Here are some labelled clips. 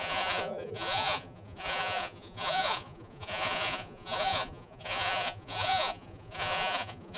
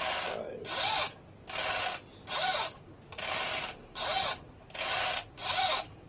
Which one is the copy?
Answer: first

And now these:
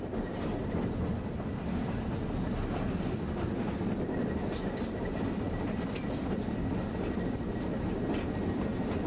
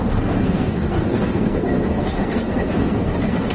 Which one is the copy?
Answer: second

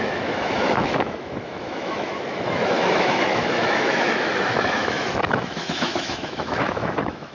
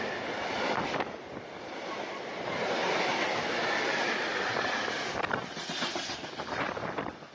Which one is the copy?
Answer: first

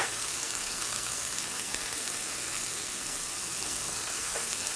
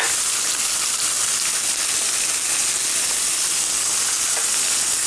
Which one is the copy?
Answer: first